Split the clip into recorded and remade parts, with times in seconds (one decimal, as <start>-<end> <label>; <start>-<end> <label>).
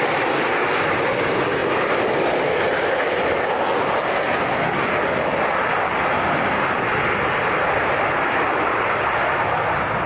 0.0-10.1 recorded